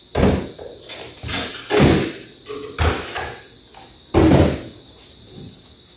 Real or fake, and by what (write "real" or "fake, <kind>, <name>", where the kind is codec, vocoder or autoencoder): real